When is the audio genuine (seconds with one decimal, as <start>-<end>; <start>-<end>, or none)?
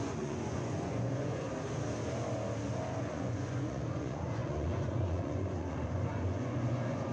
1.5-3.0